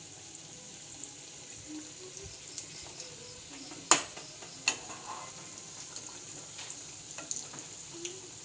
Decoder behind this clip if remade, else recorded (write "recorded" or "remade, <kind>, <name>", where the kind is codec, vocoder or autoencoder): recorded